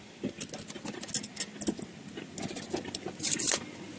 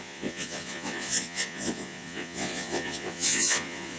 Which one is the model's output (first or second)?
second